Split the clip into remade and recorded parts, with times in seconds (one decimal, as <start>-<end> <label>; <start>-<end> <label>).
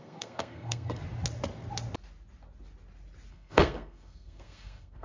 0.0-1.0 remade; 1.0-3.3 recorded; 3.3-5.0 remade